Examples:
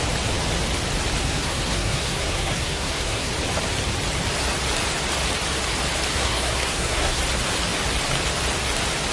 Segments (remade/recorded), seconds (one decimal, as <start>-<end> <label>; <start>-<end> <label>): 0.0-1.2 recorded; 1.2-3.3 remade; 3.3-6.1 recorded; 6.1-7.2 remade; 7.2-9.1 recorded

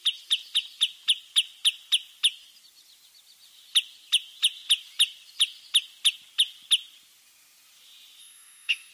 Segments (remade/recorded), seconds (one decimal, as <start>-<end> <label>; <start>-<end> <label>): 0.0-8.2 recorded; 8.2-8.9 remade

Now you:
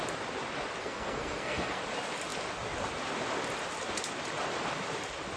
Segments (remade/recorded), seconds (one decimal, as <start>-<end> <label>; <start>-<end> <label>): 0.0-0.8 recorded; 0.8-1.8 remade; 1.8-5.4 recorded

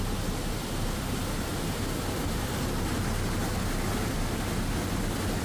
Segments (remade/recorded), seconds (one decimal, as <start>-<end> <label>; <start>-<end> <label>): 0.0-5.4 recorded

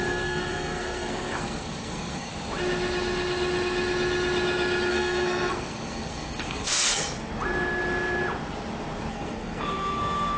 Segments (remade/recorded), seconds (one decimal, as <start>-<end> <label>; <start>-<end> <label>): 0.0-2.3 remade; 2.3-4.9 recorded; 4.9-7.3 remade; 7.3-9.1 recorded; 9.1-10.4 remade

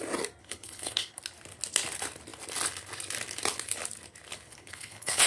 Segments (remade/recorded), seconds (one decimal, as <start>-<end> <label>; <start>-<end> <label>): 0.0-0.4 recorded; 0.4-1.2 remade; 1.2-4.5 recorded; 4.5-5.3 remade

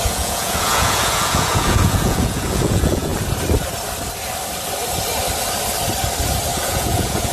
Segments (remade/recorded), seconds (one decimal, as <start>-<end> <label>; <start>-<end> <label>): 0.0-3.1 remade; 3.1-6.6 recorded; 6.6-7.3 remade